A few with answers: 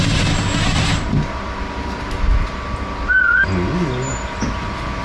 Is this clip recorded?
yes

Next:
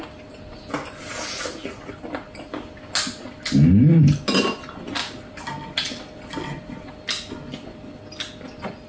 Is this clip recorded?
yes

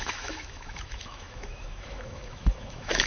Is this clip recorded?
no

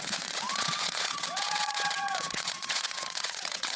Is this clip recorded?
no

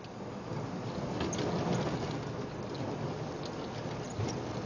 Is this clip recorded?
yes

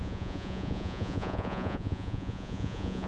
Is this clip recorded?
no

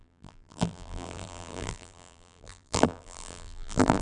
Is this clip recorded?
no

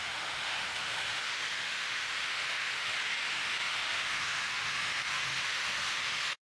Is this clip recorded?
no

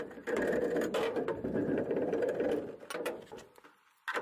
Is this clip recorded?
yes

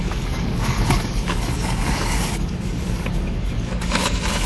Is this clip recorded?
no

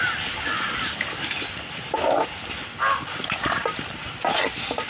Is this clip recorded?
yes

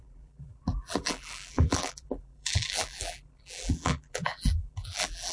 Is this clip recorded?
no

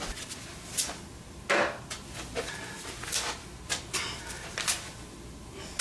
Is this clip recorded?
yes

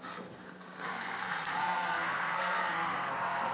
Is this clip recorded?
no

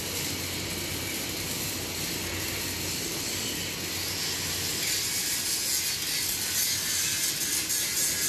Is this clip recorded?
yes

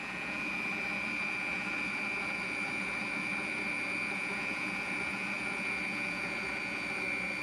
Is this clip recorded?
no